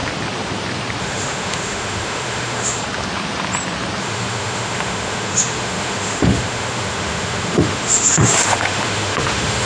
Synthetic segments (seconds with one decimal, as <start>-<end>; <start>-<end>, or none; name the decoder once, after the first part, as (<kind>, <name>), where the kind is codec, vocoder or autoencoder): 1.0-2.8 (autoencoder, DAC-VAE); 4.0-9.7